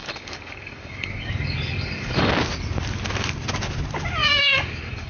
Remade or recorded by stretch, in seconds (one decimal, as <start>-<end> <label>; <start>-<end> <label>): 0.0-2.3 remade; 2.3-4.2 recorded; 4.2-5.1 remade